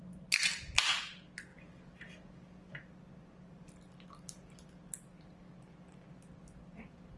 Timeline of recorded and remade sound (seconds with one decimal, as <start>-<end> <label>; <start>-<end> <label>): 0.0-7.2 recorded